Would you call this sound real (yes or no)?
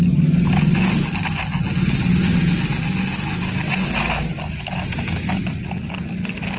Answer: yes